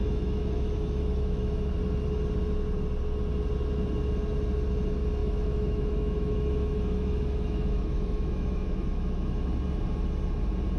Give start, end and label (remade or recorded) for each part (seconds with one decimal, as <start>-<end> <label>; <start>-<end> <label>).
0.0-1.7 remade; 1.7-5.2 recorded; 5.2-9.5 remade; 9.5-10.8 recorded